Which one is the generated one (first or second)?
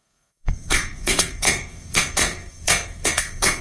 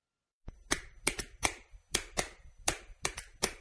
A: first